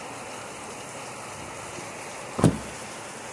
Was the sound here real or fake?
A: real